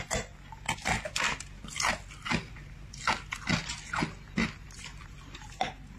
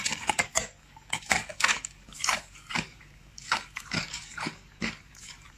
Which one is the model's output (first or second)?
second